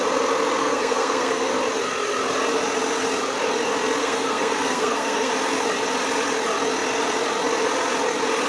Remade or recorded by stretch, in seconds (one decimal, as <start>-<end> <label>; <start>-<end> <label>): 0.0-0.6 recorded; 0.6-1.5 remade; 1.5-4.0 recorded; 4.0-5.3 remade; 5.3-8.5 recorded